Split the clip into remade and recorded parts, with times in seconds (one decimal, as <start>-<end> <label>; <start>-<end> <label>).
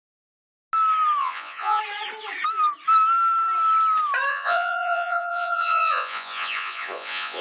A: 0.0-1.2 recorded; 1.2-1.8 remade; 1.8-4.3 recorded; 4.3-7.4 remade